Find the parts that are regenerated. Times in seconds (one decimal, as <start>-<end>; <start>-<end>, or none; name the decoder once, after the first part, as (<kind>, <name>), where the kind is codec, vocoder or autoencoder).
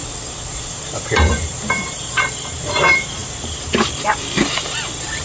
0.5-5.2 (vocoder, BigVGAN v2)